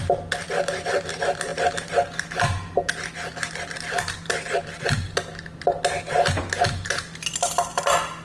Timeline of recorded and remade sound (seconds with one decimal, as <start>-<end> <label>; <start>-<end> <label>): 0.0-8.2 recorded